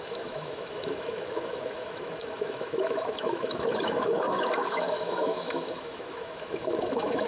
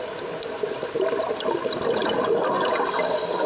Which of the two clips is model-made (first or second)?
first